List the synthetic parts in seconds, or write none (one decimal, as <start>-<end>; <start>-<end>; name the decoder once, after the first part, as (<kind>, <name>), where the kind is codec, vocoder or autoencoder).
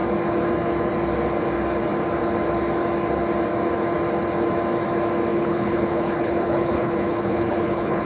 5.3-8.0 (codec, HILCodec)